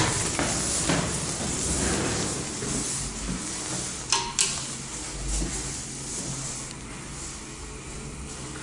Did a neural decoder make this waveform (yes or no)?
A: no